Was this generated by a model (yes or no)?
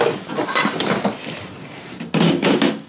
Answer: no